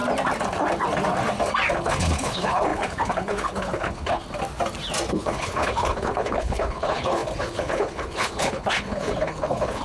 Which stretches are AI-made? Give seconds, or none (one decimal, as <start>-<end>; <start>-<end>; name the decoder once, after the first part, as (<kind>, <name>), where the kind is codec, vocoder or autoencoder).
1.7-4.2 (codec, HILCodec); 5.1-9.8